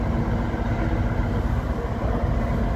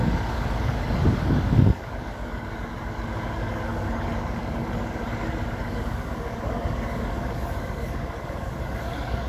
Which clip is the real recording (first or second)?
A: first